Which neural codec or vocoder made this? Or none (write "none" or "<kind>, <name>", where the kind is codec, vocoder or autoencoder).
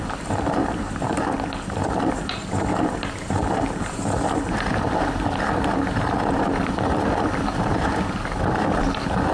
vocoder, BigVGAN v2